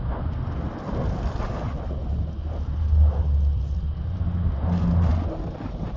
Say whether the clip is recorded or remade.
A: recorded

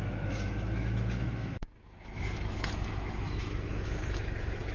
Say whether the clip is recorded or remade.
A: remade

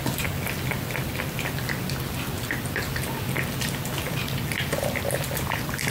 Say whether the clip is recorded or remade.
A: recorded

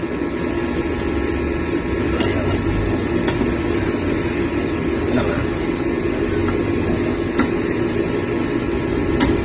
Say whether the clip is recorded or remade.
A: recorded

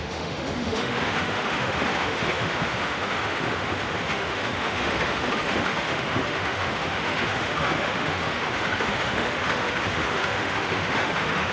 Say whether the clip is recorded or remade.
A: remade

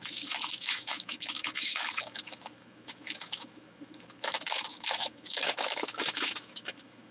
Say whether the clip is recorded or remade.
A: remade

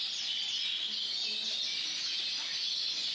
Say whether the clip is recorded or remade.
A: recorded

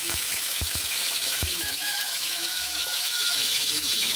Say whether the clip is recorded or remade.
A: remade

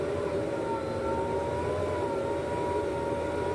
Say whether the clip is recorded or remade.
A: recorded